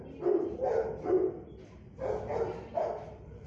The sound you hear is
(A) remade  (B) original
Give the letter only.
B